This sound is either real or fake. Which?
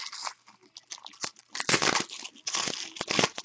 real